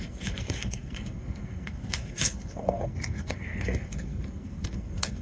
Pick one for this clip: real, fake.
fake